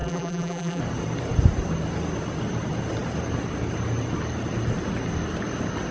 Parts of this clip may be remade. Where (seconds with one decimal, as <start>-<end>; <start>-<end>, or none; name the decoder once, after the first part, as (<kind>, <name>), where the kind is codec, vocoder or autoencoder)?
0.0-0.8 (vocoder, BigVGAN v2)